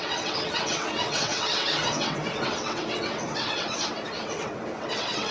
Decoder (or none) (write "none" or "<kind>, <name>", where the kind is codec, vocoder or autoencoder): vocoder, WaveNeXt